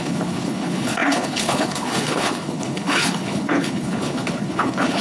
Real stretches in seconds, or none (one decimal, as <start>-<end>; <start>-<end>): none